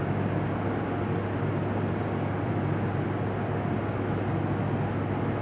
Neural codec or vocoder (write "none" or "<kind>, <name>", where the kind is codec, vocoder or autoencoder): none